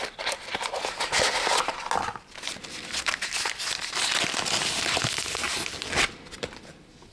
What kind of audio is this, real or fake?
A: real